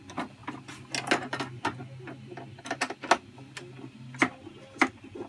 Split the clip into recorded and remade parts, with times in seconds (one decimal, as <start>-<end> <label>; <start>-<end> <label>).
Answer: 0.0-5.3 recorded